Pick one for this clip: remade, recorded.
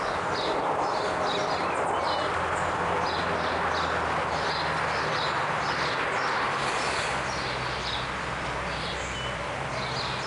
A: recorded